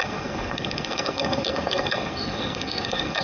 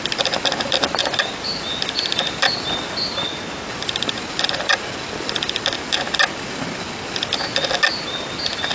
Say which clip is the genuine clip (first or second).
second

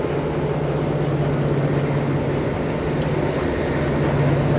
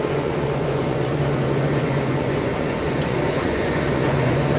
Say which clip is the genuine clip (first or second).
first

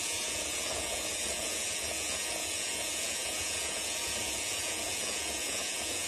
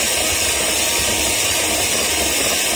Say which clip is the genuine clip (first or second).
second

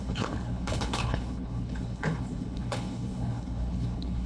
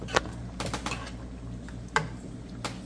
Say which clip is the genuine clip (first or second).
second